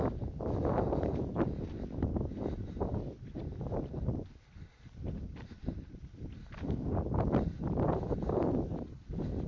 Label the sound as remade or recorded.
recorded